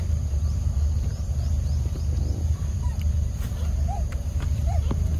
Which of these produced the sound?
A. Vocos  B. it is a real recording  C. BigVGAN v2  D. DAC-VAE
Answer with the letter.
C